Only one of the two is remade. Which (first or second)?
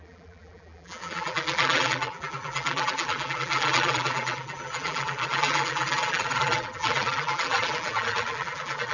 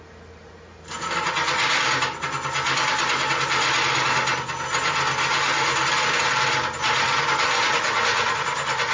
first